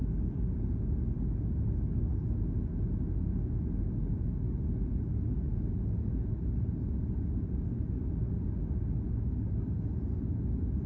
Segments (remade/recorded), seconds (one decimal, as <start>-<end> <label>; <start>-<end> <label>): 0.0-10.9 recorded

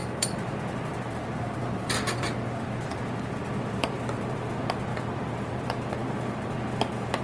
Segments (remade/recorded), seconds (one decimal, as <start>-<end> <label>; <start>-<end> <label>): 0.0-4.3 remade; 4.3-4.9 recorded; 4.9-5.6 remade; 5.6-7.2 recorded

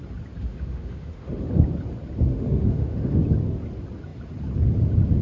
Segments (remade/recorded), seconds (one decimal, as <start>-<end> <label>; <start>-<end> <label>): 0.0-0.5 recorded; 0.5-1.4 remade; 1.4-2.3 recorded; 2.3-3.2 remade; 3.2-5.2 recorded